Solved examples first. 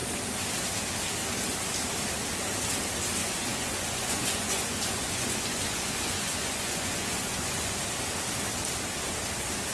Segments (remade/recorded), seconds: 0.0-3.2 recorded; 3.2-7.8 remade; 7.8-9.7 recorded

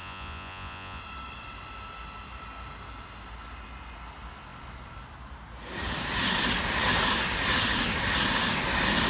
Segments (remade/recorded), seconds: 0.0-1.0 remade; 1.0-9.1 recorded